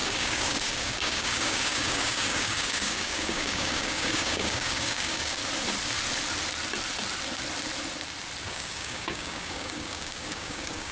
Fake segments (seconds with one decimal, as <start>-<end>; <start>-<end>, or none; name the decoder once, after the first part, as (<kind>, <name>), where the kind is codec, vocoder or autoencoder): 0.0-5.4 (codec, DAC); 8.4-10.9